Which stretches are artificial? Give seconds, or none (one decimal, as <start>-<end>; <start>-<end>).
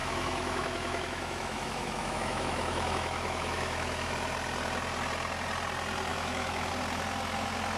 0.0-4.1; 6.1-6.7